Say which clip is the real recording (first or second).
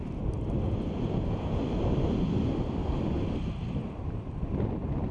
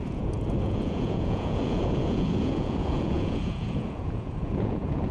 first